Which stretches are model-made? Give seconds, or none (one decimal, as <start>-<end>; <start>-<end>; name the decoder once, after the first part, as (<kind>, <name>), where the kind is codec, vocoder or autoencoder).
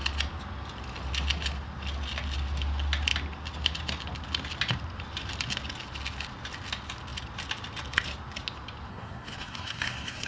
8.9-10.3 (codec, SNAC)